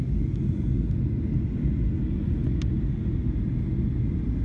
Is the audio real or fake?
real